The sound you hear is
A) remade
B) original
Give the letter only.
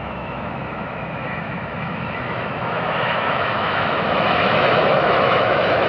A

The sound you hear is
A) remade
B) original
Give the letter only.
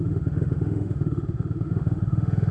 A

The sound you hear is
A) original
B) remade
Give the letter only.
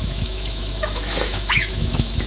B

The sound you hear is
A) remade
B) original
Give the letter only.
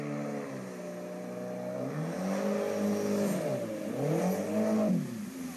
B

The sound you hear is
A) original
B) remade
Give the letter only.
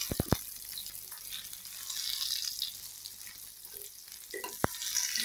A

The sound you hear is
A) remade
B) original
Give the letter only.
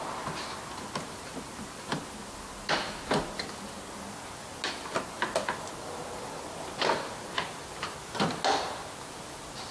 B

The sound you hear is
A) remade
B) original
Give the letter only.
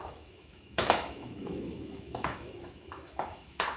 A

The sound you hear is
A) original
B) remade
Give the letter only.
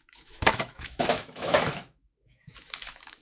B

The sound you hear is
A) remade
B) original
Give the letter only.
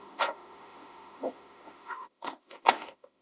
A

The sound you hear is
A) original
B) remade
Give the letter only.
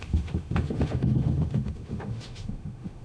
B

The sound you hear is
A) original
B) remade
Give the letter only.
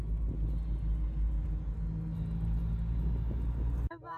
A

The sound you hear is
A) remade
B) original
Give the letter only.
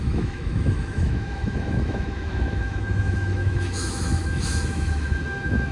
A